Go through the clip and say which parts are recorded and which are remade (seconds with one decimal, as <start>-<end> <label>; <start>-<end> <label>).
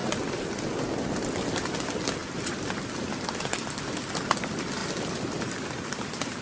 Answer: 0.0-0.5 remade; 0.5-2.2 recorded; 2.2-2.9 remade; 2.9-4.8 recorded; 4.8-6.4 remade